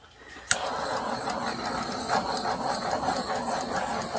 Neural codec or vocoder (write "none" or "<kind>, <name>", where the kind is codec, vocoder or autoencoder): none